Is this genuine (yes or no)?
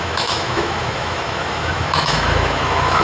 no